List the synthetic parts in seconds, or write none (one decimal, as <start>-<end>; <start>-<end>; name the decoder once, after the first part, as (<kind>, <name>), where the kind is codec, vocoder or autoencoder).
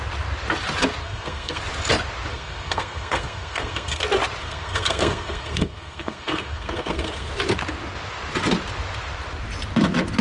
1.0-1.6 (codec, SNAC); 2.3-4.0; 4.4-7.3